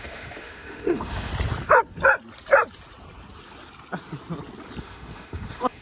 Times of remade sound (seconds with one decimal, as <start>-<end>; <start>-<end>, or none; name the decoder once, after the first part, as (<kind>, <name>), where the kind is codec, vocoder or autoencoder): 0.0-1.3 (autoencoder, DAC-VAE); 4.8-5.8